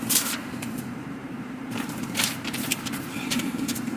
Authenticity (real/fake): fake